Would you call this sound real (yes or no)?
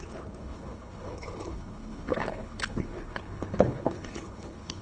no